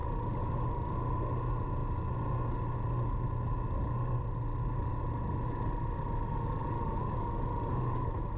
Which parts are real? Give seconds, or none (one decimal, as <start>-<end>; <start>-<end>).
0.0-8.4